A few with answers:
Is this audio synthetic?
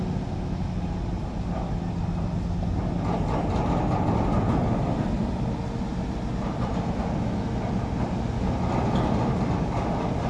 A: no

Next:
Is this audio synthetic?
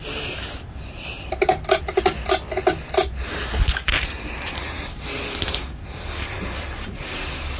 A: no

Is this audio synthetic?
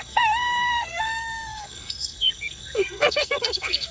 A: yes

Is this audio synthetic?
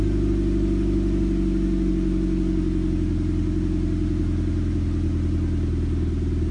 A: no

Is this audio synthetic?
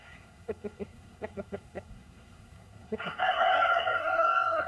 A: yes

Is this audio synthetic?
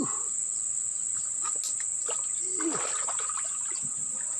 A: no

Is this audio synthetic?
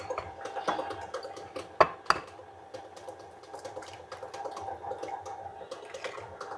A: no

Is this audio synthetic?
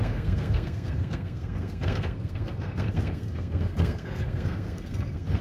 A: yes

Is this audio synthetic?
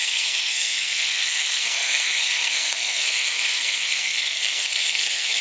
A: yes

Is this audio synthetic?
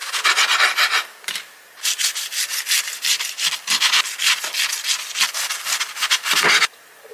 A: no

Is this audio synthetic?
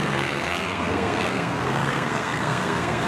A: yes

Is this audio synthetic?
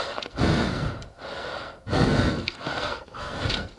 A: yes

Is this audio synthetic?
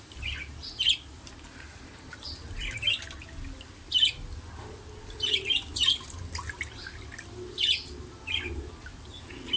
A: no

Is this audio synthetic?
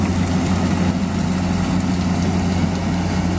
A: no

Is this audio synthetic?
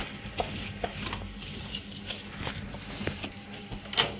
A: no